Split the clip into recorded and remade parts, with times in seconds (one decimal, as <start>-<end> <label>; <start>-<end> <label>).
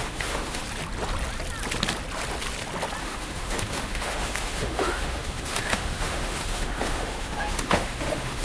0.0-0.6 remade; 0.6-3.0 recorded; 3.0-8.4 remade